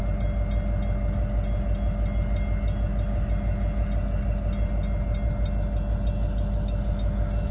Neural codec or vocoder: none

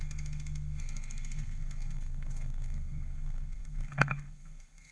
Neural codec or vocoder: codec, SNAC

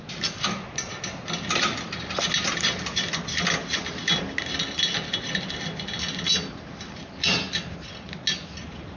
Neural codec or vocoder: none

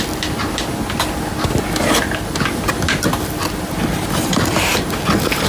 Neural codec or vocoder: none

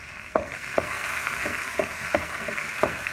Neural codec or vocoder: codec, SNAC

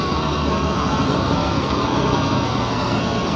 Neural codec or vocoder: codec, SNAC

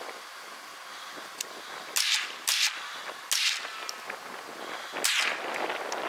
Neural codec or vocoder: none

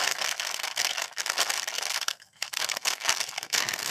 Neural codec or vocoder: codec, SNAC